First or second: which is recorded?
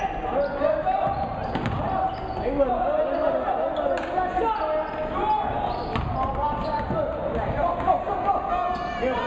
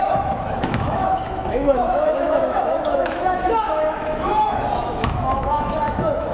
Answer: first